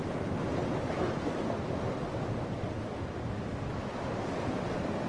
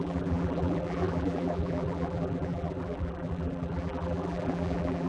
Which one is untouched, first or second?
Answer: first